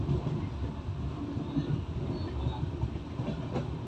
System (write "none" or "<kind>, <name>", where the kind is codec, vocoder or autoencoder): none